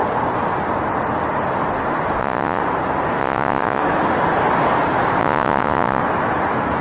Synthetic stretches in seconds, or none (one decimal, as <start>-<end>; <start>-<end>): 2.2-2.6; 3.2-3.8; 5.2-6.0